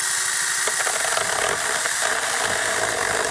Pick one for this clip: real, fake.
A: real